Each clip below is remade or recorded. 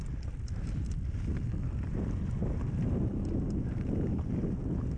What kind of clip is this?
recorded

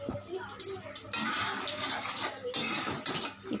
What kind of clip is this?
recorded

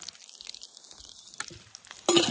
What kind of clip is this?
recorded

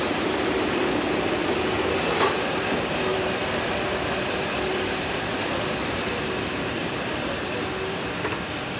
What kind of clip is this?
remade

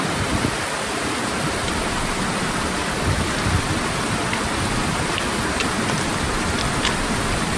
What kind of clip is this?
recorded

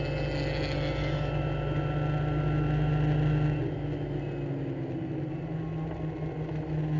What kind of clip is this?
recorded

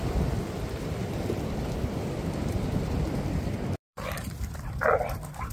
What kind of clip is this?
remade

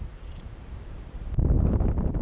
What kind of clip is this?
remade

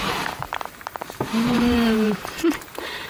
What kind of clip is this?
remade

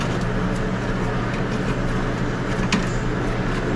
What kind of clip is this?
recorded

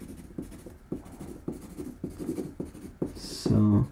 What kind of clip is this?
remade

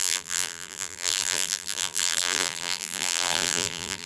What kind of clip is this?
remade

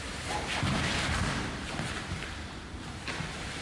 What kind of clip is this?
remade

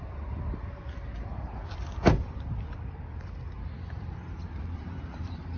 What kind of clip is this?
remade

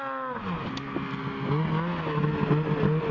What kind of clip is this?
recorded